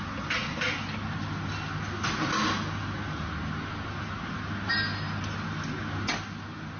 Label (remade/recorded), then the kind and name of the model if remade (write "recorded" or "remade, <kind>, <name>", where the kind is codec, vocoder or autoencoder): recorded